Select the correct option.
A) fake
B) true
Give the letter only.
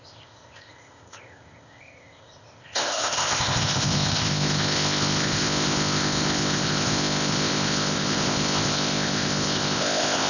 A